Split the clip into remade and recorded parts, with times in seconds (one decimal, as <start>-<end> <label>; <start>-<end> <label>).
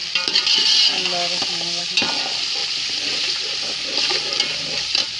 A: 0.0-5.2 recorded